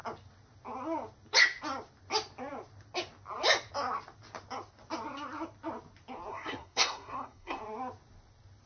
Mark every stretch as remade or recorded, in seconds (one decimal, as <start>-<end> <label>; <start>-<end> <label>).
0.0-6.3 recorded; 6.3-7.6 remade; 7.6-8.7 recorded